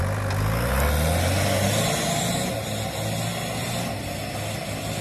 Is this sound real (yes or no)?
yes